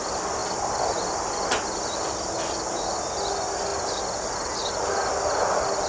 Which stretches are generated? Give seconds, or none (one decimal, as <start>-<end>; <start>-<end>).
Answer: none

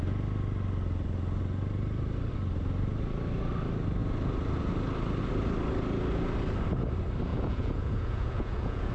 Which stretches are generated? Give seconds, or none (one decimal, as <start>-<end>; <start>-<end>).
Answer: 7.3-8.9

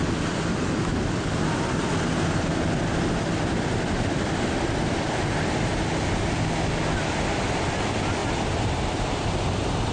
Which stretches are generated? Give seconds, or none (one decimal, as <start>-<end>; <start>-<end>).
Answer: none

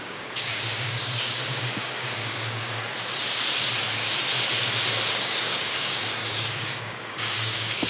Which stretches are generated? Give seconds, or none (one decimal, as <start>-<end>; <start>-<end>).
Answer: 0.0-2.9; 5.1-7.9

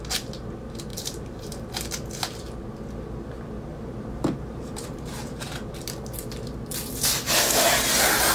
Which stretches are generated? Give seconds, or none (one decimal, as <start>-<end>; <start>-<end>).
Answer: 0.9-1.7; 3.7-5.7

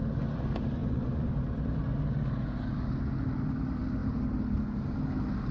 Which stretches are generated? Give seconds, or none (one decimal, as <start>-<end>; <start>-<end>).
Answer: 0.8-1.3

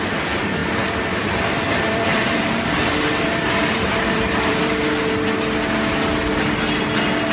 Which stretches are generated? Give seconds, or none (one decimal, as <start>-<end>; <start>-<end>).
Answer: 0.6-5.0

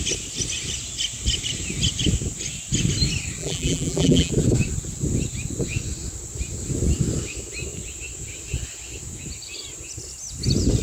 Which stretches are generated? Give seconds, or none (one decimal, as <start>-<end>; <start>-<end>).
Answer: 3.4-4.3